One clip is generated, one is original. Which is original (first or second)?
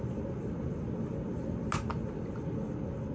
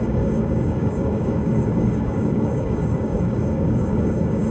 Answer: first